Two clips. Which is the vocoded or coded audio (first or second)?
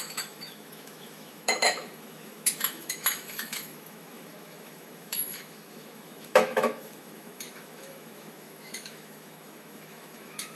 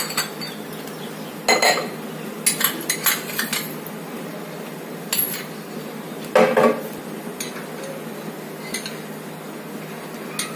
first